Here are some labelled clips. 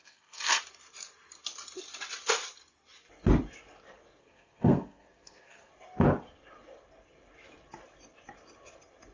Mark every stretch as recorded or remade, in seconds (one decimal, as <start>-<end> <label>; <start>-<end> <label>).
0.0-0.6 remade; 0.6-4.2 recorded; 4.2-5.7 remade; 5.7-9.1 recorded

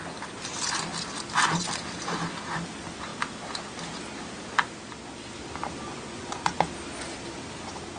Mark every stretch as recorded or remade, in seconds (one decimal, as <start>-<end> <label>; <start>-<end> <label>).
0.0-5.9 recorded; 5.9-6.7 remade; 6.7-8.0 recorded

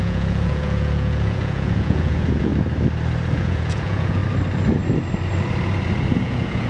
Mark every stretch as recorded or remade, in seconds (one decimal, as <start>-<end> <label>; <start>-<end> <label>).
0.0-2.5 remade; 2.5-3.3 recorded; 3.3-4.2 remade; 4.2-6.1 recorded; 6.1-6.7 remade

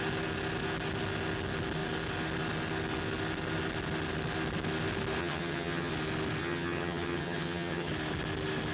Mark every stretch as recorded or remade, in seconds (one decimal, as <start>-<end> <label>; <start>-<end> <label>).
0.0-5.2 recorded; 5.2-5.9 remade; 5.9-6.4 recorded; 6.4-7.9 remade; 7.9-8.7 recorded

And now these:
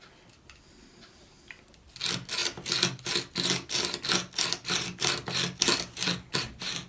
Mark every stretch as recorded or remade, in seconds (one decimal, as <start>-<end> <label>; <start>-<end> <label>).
0.0-6.9 recorded

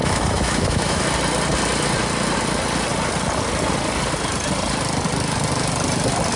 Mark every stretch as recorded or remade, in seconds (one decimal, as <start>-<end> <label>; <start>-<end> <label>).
0.0-1.0 remade; 1.0-6.4 recorded

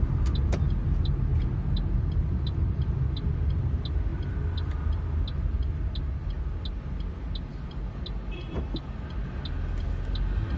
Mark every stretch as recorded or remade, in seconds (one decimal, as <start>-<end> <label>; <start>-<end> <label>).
0.0-10.6 recorded

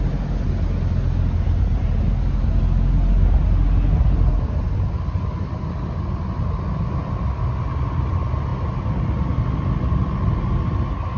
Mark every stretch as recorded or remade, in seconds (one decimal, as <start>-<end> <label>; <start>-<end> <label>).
0.0-11.2 recorded